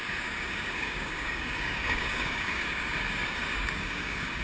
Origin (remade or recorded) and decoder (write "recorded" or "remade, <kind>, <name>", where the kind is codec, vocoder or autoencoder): remade, codec, DAC